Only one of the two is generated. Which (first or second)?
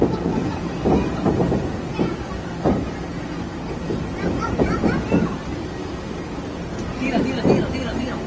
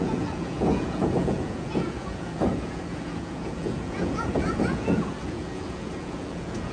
second